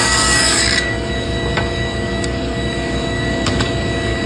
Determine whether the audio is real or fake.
fake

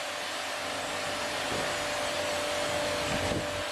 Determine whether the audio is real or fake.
real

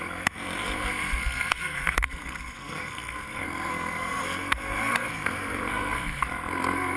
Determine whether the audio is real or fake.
fake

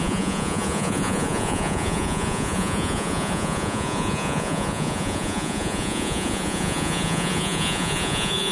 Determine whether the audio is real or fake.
fake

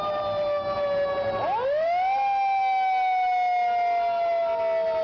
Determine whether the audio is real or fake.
real